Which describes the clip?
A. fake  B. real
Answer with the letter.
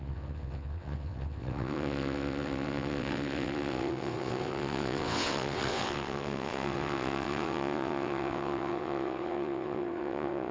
A